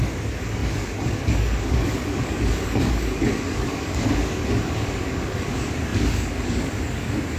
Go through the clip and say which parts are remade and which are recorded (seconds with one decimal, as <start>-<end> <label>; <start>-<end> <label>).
0.0-7.4 remade